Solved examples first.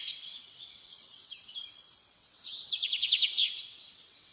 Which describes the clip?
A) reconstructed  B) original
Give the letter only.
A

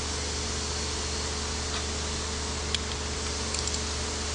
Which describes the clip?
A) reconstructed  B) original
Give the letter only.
B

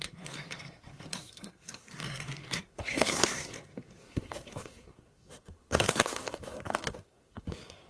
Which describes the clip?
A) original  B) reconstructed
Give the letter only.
B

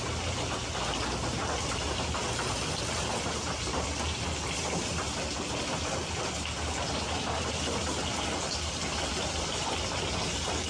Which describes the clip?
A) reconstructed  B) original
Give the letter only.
B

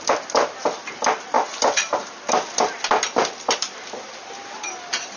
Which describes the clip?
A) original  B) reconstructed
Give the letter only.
B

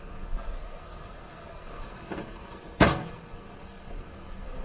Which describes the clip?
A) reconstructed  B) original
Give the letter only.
A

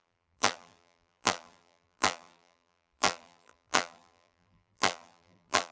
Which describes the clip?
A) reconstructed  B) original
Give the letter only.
A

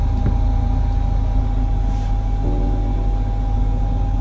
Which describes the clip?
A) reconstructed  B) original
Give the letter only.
B